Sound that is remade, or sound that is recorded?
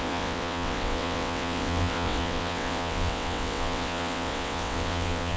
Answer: remade